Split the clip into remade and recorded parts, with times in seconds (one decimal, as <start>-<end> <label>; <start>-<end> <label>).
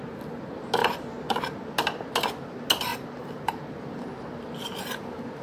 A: 0.0-0.8 recorded; 0.8-1.4 remade; 1.4-2.9 recorded; 2.9-3.8 remade; 3.8-5.4 recorded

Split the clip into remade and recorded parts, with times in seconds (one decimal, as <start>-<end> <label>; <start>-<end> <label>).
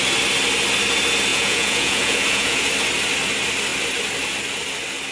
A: 0.0-1.3 recorded; 1.3-2.7 remade; 2.7-5.1 recorded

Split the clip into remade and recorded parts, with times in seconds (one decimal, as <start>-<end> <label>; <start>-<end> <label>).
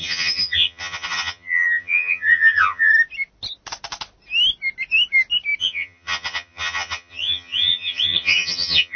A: 0.0-2.9 remade; 2.9-5.6 recorded; 5.6-9.0 remade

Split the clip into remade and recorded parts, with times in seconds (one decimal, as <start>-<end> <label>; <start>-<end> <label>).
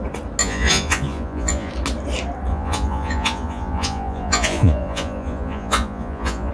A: 0.0-0.4 recorded; 0.4-1.7 remade; 1.7-2.5 recorded; 2.5-6.5 remade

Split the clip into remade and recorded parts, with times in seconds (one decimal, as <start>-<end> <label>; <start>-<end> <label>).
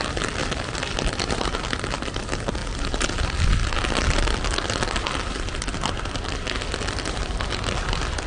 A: 0.0-8.3 recorded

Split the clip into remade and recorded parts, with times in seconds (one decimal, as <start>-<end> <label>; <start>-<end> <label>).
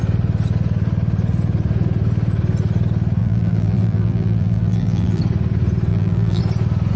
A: 0.0-3.2 recorded; 3.2-5.2 remade; 5.2-5.9 recorded; 5.9-6.4 remade; 6.4-7.0 recorded